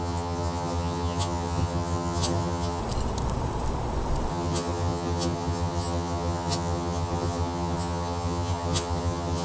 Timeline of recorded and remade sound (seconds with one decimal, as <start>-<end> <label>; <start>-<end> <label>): 0.0-2.8 remade; 2.8-4.3 recorded; 4.3-9.4 remade